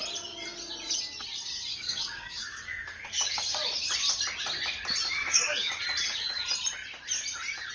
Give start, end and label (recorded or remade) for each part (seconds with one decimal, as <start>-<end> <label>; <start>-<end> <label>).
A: 0.0-1.7 recorded; 1.7-3.4 remade; 3.4-5.2 recorded; 5.2-5.8 remade; 5.8-7.7 recorded